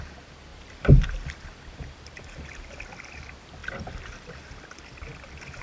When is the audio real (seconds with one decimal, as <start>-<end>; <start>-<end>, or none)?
0.0-0.5; 2.4-3.6